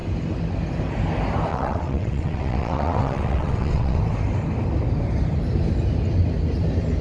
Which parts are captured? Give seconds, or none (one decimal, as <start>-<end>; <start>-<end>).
0.0-1.5; 4.0-7.0